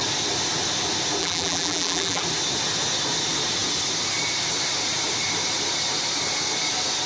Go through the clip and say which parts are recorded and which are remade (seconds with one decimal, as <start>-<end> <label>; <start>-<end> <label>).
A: 0.0-1.2 recorded; 1.2-2.2 remade; 2.2-7.1 recorded

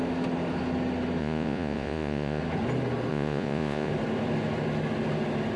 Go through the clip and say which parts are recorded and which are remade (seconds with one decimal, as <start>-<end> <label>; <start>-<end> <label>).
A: 0.0-1.2 recorded; 1.2-2.4 remade; 2.4-3.1 recorded; 3.1-3.9 remade; 3.9-5.6 recorded

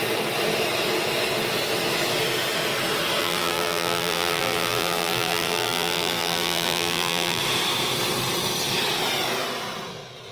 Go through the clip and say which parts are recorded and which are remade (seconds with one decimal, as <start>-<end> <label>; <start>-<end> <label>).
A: 0.0-3.2 recorded; 3.2-7.4 remade; 7.4-10.3 recorded

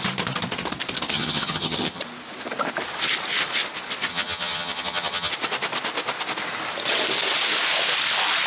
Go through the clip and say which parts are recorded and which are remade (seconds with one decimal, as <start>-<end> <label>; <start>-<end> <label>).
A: 0.0-1.1 recorded; 1.1-2.0 remade; 2.0-4.1 recorded; 4.1-5.3 remade; 5.3-8.5 recorded